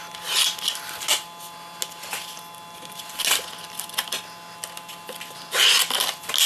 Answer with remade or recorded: recorded